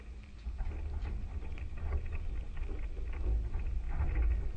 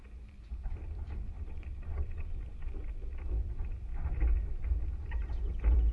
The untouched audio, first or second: first